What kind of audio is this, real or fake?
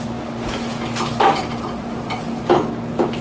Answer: real